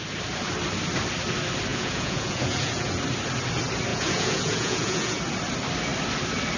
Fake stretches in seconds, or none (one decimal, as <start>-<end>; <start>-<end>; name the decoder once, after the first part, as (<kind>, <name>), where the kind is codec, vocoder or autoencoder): 1.7-2.9 (vocoder, Vocos); 3.9-5.2

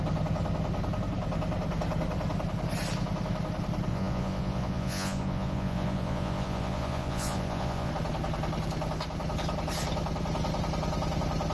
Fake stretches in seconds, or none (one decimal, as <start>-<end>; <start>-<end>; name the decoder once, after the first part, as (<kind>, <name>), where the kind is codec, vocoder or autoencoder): 3.9-7.9 (vocoder, Vocos)

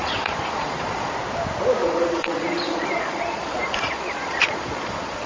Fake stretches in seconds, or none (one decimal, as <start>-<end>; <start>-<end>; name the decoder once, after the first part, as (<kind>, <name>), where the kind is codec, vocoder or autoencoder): 0.0-1.1 (vocoder, Vocos); 1.8-5.3

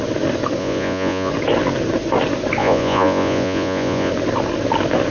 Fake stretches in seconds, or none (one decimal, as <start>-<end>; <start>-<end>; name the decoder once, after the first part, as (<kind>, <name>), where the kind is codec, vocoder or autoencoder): 0.6-1.3 (vocoder, Vocos); 2.6-4.1

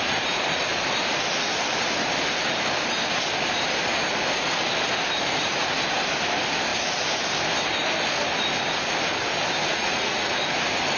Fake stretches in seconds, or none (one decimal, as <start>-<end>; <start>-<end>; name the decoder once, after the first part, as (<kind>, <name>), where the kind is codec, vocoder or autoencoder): 9.6-10.4 (vocoder, Vocos)